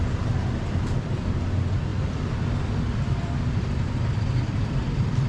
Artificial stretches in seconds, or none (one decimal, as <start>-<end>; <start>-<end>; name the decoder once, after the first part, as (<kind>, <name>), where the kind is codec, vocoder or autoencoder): 1.9-5.3 (vocoder, BigVGAN v2)